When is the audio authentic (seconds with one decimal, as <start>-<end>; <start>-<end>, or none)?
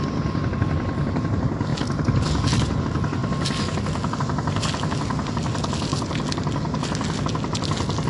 0.0-8.1